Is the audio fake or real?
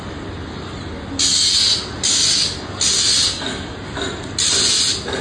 real